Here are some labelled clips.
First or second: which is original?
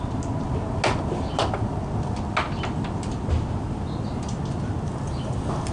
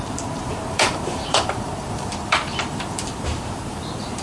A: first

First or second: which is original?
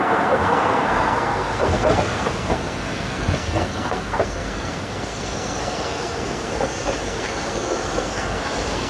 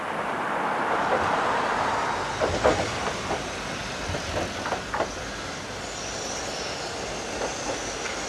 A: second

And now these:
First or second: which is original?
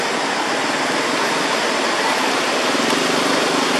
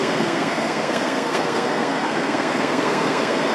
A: first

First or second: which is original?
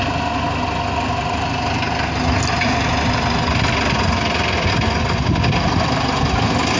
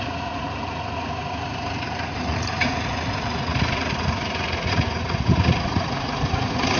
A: first